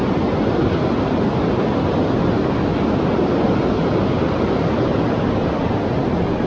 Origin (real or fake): real